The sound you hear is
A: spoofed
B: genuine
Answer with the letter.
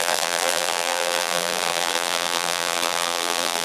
A